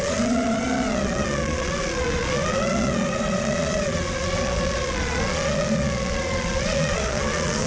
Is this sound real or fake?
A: fake